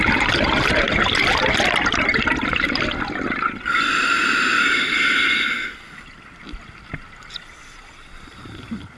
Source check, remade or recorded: recorded